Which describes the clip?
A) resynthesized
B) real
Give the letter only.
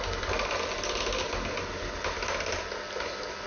B